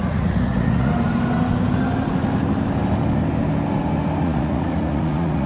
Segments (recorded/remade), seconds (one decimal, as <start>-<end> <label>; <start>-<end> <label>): 0.0-0.9 remade; 0.9-4.2 recorded; 4.2-5.5 remade